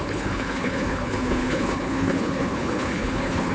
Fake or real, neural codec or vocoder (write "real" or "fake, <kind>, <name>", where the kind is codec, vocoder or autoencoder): fake, codec, HILCodec